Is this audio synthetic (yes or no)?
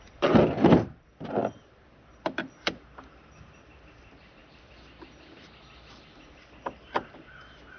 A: yes